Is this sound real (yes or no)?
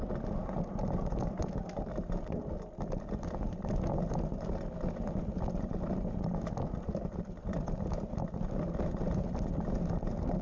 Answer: yes